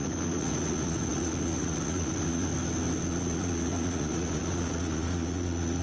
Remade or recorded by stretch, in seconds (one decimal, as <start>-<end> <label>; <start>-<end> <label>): 0.0-2.5 remade; 2.5-3.0 recorded; 3.0-5.8 remade